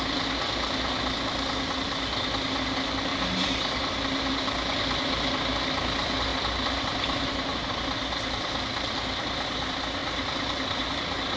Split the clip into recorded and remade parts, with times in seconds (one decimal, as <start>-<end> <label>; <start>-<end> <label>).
0.0-3.1 recorded; 3.1-3.8 remade; 3.8-6.3 recorded; 6.3-7.3 remade; 7.3-11.4 recorded